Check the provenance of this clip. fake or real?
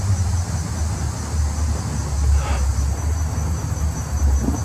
real